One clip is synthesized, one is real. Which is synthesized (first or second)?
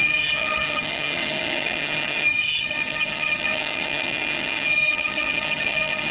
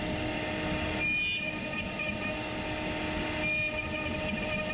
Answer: first